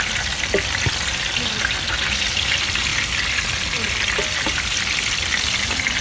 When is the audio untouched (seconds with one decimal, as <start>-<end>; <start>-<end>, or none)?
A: 0.0-6.0

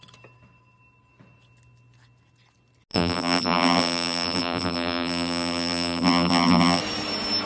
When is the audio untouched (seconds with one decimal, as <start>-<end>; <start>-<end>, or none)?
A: 0.0-2.9; 6.8-7.5

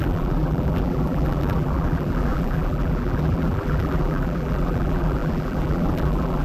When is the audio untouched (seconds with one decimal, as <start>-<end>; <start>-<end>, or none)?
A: none

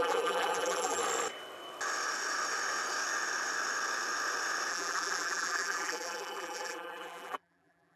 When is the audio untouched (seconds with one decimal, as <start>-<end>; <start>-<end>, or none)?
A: 1.0-4.7

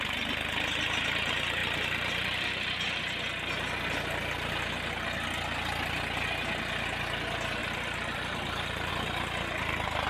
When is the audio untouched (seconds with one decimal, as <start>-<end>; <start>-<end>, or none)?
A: 0.0-1.6; 2.7-7.6; 8.9-10.1

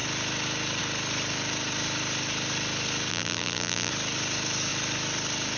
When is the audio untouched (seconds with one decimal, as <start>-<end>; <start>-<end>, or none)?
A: 0.0-3.1; 3.9-5.6

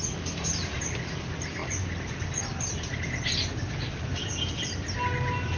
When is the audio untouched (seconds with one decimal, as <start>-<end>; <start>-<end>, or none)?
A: 0.0-5.6

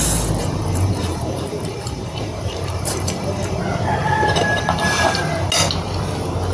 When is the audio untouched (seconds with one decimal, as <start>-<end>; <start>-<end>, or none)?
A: 0.0-0.4; 3.6-4.0; 5.2-6.5